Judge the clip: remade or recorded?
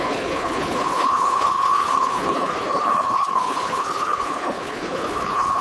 remade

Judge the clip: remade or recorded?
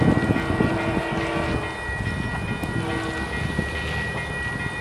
recorded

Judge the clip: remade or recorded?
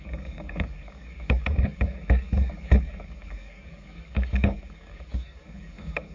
remade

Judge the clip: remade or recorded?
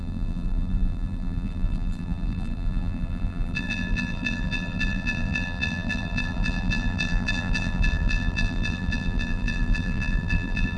remade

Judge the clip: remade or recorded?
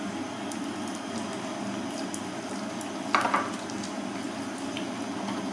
recorded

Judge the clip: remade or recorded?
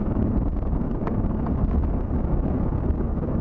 remade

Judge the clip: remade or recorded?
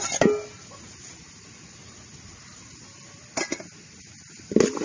recorded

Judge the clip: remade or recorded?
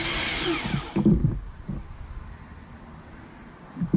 recorded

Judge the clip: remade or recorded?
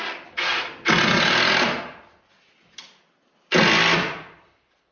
recorded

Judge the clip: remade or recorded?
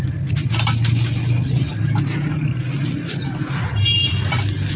recorded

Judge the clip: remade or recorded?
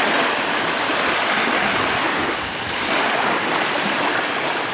recorded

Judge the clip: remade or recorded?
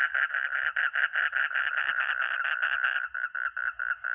remade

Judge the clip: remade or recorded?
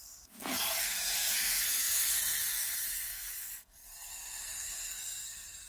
remade